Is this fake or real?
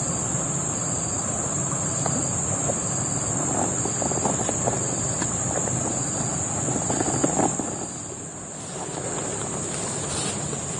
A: real